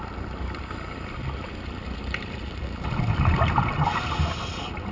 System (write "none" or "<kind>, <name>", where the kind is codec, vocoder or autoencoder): none